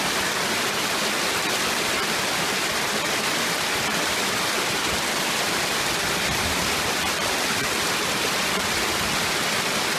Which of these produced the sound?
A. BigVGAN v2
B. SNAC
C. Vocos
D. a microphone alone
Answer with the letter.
A